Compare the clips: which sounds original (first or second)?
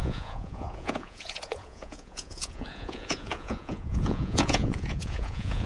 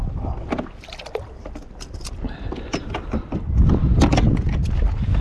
second